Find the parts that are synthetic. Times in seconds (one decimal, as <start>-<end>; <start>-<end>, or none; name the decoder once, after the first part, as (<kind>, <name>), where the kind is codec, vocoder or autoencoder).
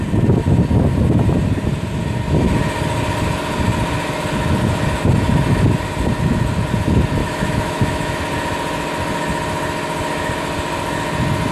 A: 7.2-8.2 (autoencoder, DAC-VAE)